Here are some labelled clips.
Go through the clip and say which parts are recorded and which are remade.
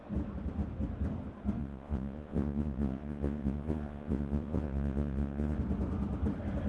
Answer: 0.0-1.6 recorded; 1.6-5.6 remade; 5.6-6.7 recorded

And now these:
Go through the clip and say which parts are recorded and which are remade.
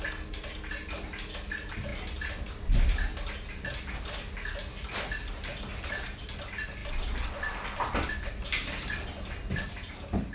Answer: 0.0-10.3 recorded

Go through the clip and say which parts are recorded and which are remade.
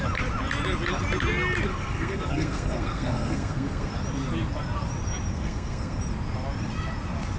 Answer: 0.0-1.7 recorded; 1.7-3.9 remade; 3.9-5.3 recorded; 5.3-6.0 remade; 6.0-7.4 recorded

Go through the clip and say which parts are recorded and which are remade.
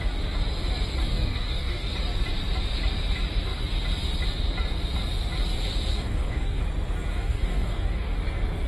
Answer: 0.0-1.0 recorded; 1.0-1.9 remade; 1.9-5.9 recorded; 5.9-6.6 remade; 6.6-7.1 recorded; 7.1-8.2 remade; 8.2-8.7 recorded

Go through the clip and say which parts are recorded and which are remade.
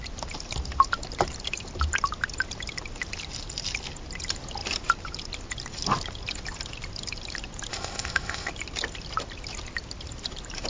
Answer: 0.0-7.7 recorded; 7.7-8.5 remade; 8.5-10.7 recorded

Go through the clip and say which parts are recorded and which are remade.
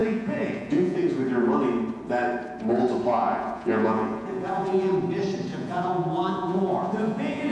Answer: 0.0-1.2 remade; 1.2-3.1 recorded; 3.1-4.9 remade; 4.9-5.5 recorded; 5.5-7.5 remade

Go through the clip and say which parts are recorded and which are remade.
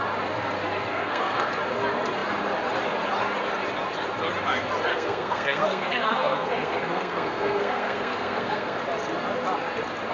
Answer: 0.0-0.9 recorded; 0.9-1.5 remade; 1.5-4.9 recorded; 4.9-8.8 remade; 8.8-10.1 recorded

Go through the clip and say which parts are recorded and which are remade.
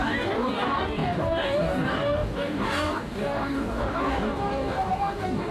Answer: 0.0-5.5 remade